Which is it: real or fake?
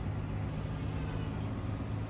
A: real